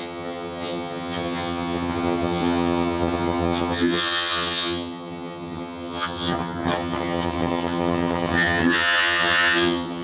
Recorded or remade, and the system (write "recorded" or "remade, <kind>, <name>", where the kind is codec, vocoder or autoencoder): remade, vocoder, HiFi-GAN